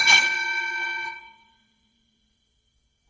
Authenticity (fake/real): fake